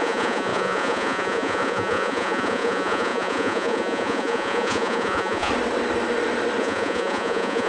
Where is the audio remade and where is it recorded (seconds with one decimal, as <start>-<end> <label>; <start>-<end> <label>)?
0.0-5.5 remade; 5.5-6.6 recorded; 6.6-7.7 remade